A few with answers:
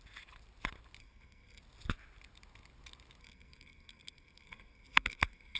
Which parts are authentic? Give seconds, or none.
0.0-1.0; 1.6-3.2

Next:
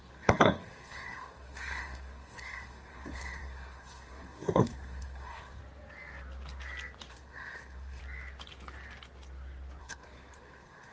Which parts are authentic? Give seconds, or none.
5.6-7.1; 8.0-9.8